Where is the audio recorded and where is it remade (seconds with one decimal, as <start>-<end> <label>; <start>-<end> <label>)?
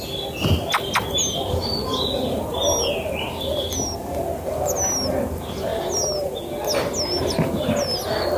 0.0-8.4 recorded